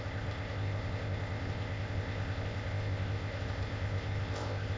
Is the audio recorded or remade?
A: remade